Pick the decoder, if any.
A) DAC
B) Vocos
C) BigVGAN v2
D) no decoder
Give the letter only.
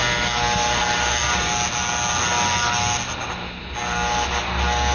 D